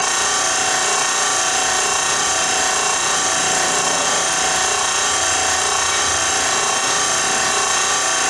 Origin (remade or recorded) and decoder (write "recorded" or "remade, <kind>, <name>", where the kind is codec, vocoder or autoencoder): recorded